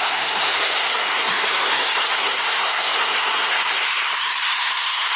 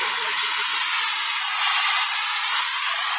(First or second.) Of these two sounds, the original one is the second